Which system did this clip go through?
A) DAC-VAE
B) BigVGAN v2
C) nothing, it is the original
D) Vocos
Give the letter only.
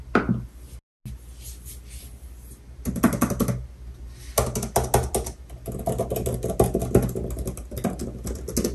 C